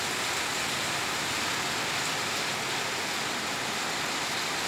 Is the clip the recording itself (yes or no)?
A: yes